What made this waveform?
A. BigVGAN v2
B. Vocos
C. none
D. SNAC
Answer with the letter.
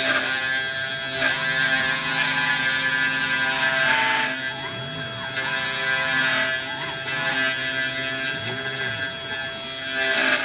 C